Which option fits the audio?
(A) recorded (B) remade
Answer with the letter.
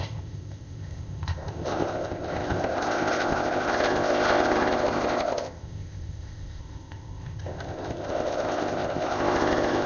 B